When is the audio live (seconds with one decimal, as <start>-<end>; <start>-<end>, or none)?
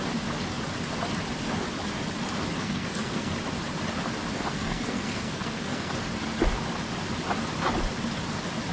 0.0-2.6; 3.3-4.5; 5.9-8.7